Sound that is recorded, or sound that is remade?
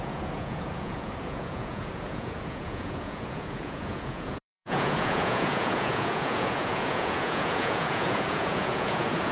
remade